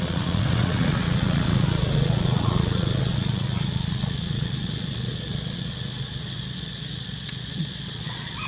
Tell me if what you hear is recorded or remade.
remade